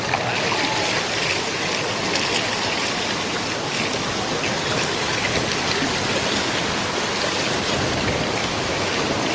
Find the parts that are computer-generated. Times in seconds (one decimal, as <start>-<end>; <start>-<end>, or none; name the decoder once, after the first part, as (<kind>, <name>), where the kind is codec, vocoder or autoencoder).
8.4-8.9 (autoencoder, DAC-VAE)